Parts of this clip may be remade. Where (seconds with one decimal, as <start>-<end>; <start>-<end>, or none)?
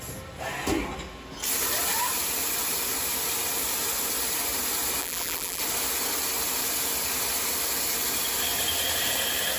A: 5.0-5.6